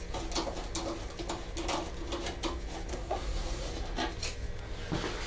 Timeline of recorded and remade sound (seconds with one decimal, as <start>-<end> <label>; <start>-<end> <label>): 0.0-2.9 recorded; 2.9-3.7 remade; 3.7-5.3 recorded